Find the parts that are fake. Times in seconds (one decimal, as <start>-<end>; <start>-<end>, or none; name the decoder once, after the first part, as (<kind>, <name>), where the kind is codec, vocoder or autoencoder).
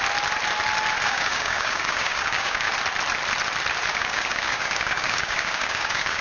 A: 1.0-2.7 (codec, DAC); 3.9-6.2